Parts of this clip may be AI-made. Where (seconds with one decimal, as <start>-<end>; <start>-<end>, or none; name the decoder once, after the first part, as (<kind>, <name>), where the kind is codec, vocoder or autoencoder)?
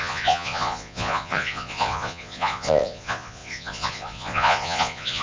0.0-5.2 (vocoder, Vocos)